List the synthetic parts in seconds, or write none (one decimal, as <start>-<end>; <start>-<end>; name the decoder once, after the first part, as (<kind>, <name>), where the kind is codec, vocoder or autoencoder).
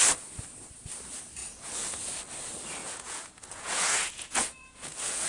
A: 1.4-2.1 (vocoder, Vocos); 2.8-5.3